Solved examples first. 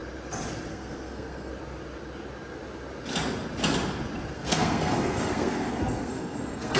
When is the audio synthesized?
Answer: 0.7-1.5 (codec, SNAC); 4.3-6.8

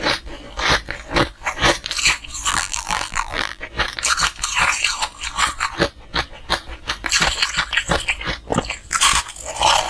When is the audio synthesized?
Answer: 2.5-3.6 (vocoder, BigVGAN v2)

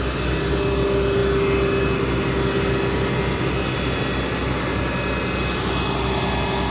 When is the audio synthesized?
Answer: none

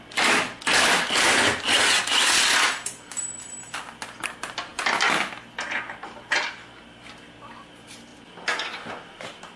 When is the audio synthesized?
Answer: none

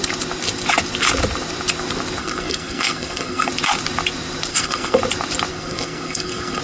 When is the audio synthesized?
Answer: 2.2-3.5 (codec, SNAC); 4.5-5.0; 5.5-6.6

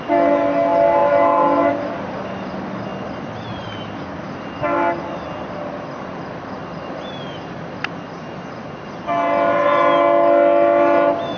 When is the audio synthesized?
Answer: none